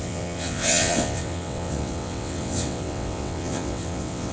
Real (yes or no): no